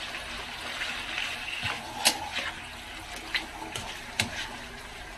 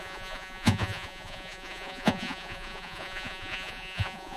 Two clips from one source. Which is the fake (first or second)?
second